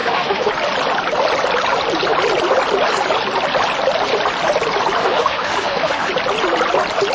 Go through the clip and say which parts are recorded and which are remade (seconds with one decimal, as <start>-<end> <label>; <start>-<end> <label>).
0.0-0.5 remade; 0.5-5.0 recorded; 5.0-6.1 remade; 6.1-7.1 recorded